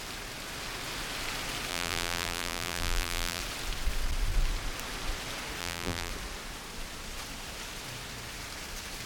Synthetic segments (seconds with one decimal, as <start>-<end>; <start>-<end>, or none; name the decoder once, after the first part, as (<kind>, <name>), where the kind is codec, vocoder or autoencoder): 1.7-3.4 (vocoder, BigVGAN v2); 5.6-6.1